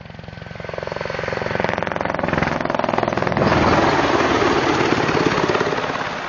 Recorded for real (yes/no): yes